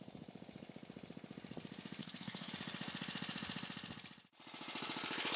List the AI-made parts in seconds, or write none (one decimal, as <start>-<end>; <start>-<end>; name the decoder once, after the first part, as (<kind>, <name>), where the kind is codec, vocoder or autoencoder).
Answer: 2.0-2.5 (codec, SNAC)